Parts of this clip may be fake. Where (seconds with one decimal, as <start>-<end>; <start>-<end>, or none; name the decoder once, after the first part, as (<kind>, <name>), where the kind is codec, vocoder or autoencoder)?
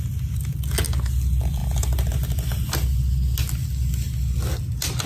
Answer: none